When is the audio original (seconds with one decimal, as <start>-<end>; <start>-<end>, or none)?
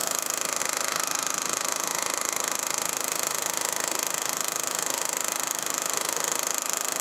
none